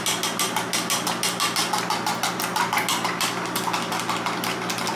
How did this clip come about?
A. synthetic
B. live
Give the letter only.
B